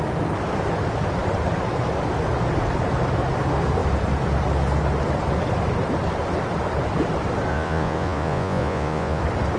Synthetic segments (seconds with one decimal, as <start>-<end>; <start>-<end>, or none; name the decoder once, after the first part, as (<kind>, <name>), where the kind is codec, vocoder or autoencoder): 7.5-9.2 (vocoder, Vocos)

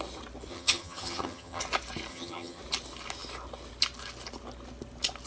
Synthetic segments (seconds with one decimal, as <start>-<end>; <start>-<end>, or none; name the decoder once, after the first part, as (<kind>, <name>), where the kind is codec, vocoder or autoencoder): 0.5-1.6 (vocoder, HiFi-GAN); 2.1-2.6

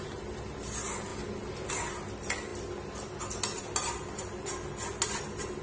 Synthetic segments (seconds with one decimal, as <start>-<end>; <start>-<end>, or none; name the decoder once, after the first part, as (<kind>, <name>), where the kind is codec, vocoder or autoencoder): none

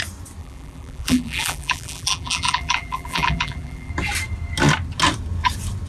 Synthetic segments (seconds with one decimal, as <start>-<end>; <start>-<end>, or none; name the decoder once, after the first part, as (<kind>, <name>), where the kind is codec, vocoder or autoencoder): 0.4-3.9 (vocoder, BigVGAN v2)

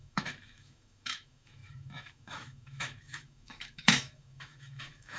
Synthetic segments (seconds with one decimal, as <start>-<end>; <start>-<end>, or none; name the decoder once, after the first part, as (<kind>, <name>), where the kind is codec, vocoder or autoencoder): 0.0-5.2 (autoencoder, DAC-VAE)

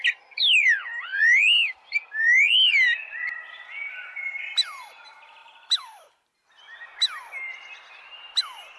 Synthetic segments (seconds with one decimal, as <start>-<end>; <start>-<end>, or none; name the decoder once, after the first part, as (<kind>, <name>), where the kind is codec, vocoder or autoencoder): none